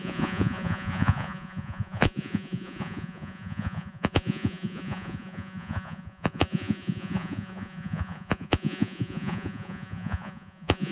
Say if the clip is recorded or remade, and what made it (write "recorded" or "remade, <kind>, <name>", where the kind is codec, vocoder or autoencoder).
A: remade, vocoder, Vocos